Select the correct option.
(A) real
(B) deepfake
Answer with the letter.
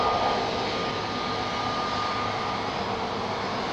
A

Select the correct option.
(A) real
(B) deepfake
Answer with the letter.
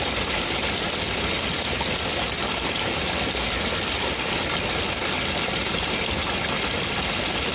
A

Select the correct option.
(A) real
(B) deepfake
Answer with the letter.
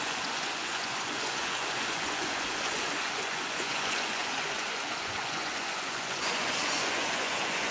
B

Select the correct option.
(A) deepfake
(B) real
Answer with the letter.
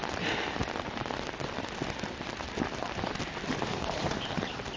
B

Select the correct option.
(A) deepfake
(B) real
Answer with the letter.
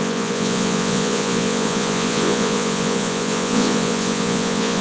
A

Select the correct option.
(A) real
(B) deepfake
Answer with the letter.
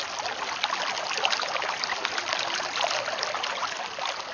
A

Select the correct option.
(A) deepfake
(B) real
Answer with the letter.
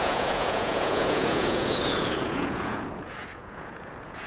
A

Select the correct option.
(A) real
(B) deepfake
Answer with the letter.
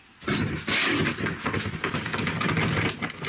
A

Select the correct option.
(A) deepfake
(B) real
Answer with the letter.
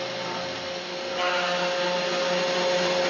B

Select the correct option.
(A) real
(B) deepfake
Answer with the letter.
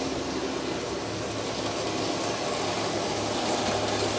A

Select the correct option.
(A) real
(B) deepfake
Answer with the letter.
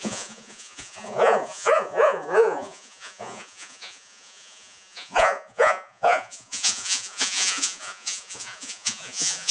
B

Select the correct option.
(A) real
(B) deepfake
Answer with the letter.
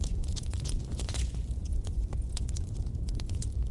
B